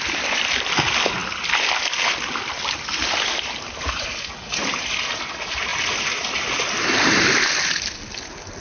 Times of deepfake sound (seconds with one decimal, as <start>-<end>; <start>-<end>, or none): none